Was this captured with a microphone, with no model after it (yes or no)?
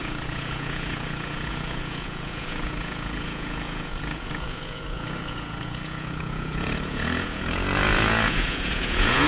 no